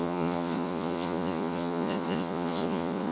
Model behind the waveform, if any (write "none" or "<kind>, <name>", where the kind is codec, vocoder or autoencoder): vocoder, Vocos